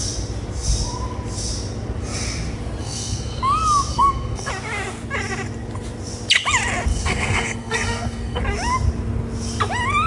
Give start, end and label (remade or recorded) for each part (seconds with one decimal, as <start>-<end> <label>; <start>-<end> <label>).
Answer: 0.0-2.8 recorded; 2.8-3.4 remade; 3.4-3.9 recorded; 3.9-4.5 remade; 4.5-6.9 recorded; 6.9-8.4 remade; 8.4-10.1 recorded